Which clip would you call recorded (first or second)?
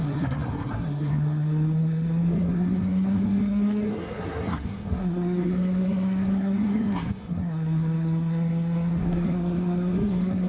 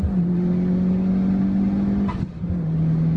second